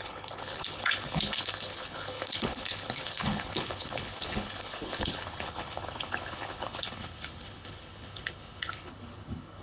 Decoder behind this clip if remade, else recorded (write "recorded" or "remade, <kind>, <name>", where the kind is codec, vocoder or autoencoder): remade, codec, HILCodec